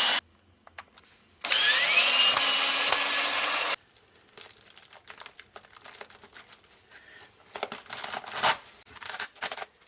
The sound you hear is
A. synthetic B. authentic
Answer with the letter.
B